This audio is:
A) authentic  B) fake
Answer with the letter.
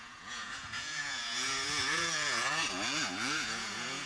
B